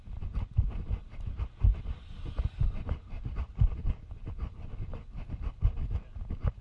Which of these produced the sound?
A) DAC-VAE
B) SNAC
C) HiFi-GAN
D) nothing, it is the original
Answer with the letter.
D